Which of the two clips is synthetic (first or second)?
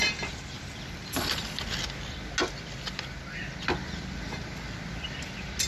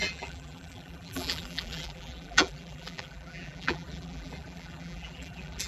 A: second